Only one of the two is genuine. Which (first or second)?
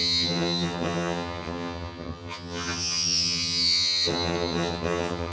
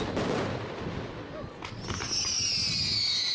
second